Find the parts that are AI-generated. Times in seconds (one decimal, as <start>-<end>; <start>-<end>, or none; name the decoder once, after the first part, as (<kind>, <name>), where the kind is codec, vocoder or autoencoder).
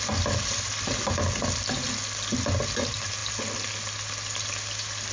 none